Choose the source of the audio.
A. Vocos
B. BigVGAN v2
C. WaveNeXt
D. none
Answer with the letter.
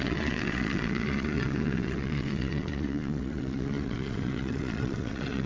C